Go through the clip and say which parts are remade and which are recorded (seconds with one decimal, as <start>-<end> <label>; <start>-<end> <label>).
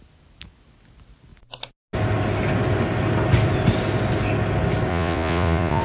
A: 0.0-4.9 recorded; 4.9-5.8 remade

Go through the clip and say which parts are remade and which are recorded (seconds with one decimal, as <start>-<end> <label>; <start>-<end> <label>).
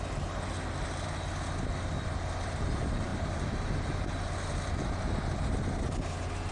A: 0.0-6.5 recorded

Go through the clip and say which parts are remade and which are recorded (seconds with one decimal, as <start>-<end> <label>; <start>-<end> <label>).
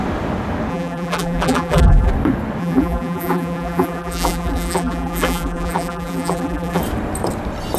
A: 0.0-0.7 recorded; 0.7-2.1 remade; 2.1-2.6 recorded; 2.6-6.8 remade; 6.8-7.8 recorded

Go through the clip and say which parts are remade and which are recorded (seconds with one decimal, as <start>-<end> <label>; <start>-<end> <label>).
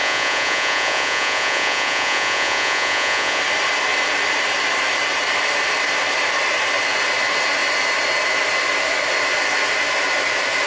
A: 0.0-3.4 remade; 3.4-10.7 recorded